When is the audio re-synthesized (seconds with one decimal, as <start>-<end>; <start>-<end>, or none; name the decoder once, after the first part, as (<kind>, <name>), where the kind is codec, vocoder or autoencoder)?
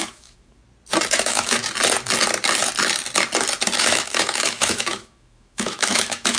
0.0-0.6 (autoencoder, DAC-VAE); 1.1-1.6; 3.8-6.4